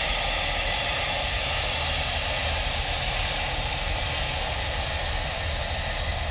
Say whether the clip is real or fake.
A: real